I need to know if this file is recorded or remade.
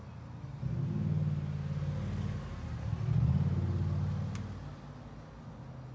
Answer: recorded